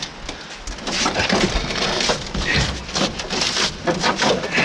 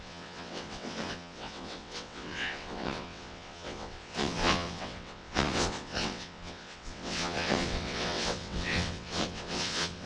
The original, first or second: first